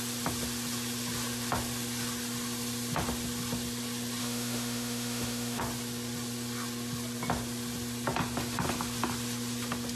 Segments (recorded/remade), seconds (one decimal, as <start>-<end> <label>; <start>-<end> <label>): 0.0-4.2 recorded; 4.2-5.6 remade; 5.6-10.0 recorded